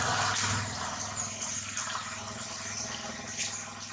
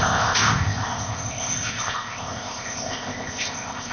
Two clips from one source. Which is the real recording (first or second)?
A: first